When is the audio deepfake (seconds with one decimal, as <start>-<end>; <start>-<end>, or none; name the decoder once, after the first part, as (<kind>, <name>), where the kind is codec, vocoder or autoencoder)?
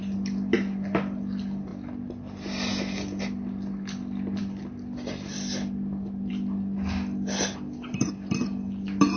none